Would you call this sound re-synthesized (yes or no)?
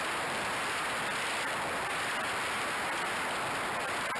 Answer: no